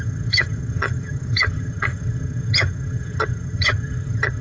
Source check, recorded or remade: remade